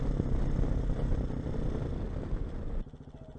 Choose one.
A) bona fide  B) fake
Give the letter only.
A